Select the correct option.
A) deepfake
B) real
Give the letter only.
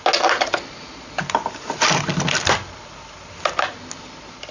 B